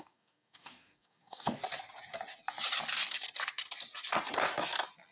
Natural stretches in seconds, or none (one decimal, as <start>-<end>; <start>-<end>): 1.6-5.1